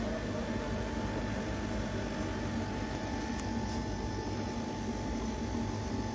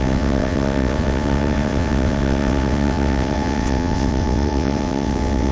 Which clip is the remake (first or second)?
second